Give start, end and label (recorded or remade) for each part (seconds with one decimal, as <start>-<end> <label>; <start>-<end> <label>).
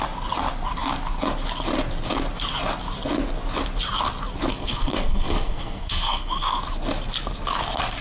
0.0-4.5 recorded; 4.5-6.6 remade; 6.6-8.0 recorded